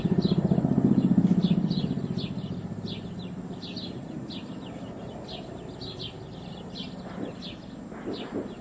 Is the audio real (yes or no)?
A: yes